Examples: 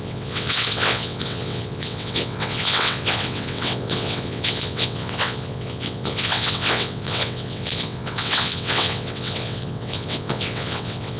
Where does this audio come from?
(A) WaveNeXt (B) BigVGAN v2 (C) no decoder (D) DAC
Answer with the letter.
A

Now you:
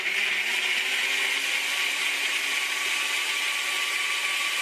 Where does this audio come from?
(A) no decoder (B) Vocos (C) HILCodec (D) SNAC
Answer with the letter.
A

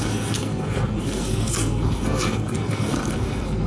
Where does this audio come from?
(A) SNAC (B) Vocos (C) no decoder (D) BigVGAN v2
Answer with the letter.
A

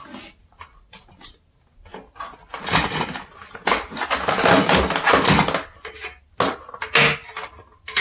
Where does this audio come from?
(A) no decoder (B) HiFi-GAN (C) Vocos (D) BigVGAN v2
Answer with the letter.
A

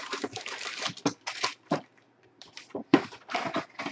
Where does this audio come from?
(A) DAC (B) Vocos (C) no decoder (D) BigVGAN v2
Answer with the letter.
D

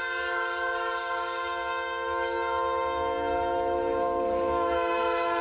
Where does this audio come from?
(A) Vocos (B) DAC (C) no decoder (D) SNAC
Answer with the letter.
B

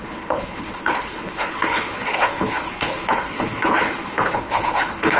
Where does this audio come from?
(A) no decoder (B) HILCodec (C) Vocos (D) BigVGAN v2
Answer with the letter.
B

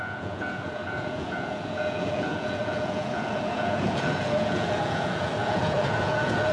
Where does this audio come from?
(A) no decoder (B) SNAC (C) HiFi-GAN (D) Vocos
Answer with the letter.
D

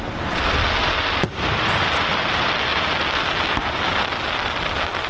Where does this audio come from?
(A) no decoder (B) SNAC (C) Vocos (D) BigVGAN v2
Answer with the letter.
A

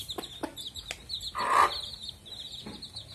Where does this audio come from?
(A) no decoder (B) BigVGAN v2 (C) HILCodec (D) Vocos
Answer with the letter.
A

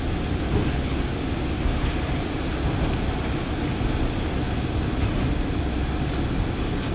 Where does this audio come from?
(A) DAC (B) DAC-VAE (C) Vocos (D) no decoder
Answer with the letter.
D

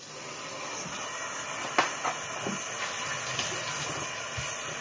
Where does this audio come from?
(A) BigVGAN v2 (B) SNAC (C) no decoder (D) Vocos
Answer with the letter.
C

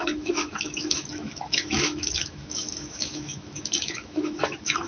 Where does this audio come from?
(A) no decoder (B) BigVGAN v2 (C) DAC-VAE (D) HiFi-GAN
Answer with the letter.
C